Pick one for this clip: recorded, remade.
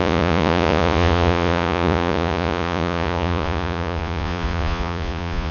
remade